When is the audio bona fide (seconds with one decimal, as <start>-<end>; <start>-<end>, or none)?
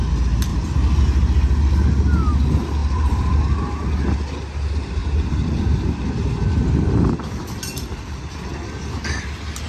0.0-0.5; 1.0-2.8; 3.4-5.0; 5.8-7.9; 8.4-9.7